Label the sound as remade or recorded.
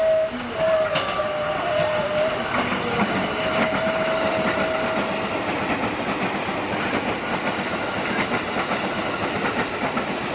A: recorded